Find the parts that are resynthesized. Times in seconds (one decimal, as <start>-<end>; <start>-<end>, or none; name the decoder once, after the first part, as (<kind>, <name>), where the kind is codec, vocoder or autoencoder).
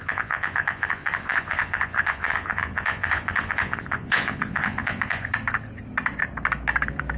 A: 0.0-5.3 (vocoder, Vocos)